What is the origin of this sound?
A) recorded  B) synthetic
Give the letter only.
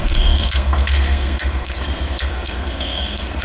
B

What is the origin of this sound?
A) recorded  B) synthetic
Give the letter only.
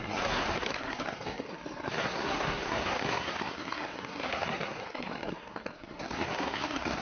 B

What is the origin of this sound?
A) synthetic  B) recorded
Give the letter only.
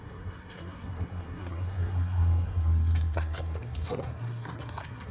A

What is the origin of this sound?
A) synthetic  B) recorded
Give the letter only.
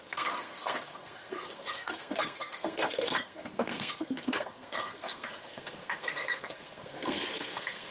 A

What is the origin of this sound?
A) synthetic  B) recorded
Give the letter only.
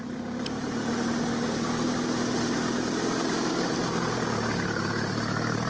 B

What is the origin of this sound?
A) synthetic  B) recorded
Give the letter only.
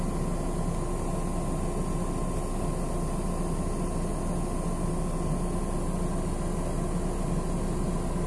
B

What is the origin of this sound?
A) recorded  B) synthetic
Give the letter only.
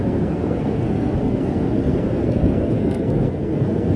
B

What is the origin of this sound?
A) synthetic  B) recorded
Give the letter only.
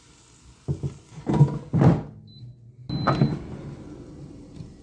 B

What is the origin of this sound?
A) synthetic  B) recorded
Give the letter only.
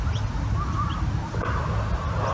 B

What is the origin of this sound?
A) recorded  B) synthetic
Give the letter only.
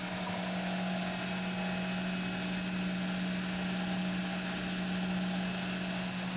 A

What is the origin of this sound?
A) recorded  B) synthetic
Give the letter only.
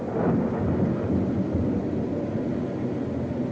A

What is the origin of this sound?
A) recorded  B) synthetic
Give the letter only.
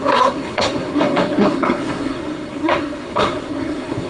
B